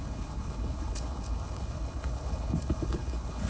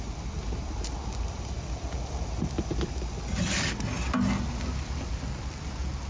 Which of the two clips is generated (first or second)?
first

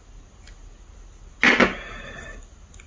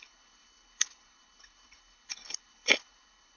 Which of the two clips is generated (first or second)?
second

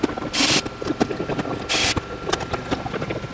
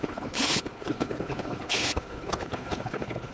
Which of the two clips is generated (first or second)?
second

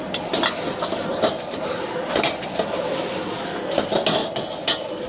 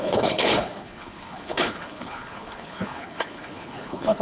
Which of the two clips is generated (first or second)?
second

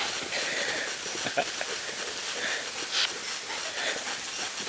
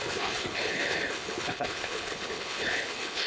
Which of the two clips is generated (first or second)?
second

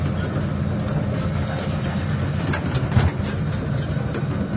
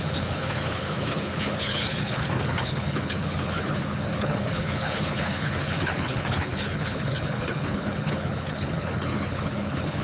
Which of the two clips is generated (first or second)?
second